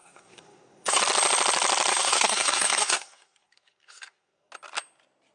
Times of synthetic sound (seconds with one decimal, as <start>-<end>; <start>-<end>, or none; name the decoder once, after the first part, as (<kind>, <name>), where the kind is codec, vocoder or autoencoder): 0.0-1.0 (codec, SNAC); 1.9-4.5